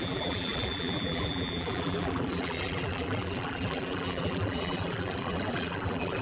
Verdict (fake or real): fake